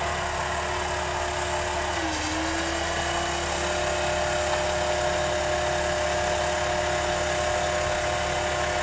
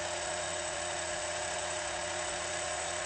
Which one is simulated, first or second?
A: second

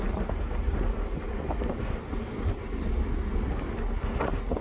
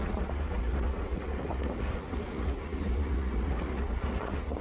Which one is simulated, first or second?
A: second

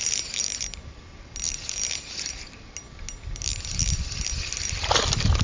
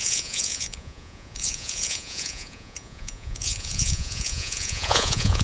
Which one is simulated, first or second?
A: second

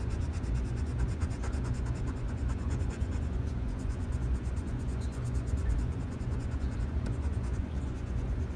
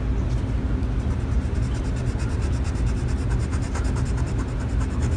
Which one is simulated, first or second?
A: first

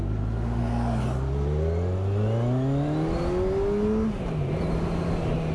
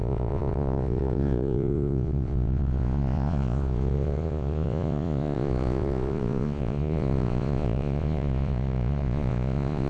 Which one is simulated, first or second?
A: second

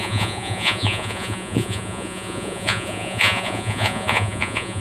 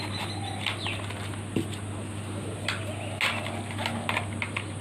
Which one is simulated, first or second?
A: first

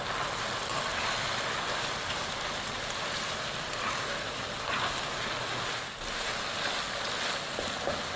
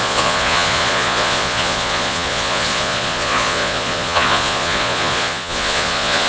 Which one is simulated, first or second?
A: second